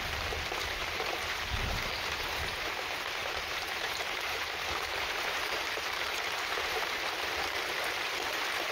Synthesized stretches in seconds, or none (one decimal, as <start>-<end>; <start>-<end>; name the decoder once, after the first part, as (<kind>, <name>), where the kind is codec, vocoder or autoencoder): 0.8-2.8 (vocoder, BigVGAN v2); 3.2-7.0